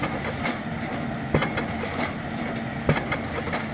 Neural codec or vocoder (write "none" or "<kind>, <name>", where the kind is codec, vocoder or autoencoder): none